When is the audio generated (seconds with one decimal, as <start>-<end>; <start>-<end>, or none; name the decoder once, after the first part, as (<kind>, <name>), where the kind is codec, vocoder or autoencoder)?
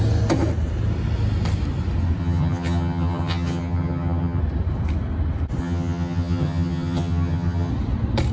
2.2-4.4 (vocoder, HiFi-GAN); 5.6-7.7